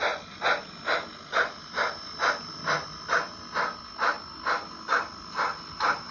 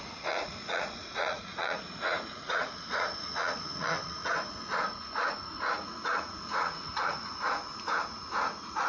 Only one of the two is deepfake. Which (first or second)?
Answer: second